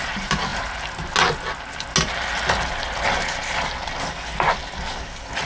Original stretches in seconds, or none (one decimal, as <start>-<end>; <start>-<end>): 0.0-5.5